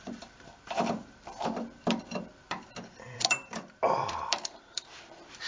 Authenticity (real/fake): fake